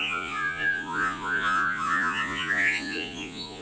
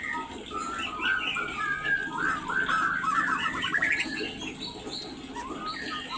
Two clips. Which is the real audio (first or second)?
second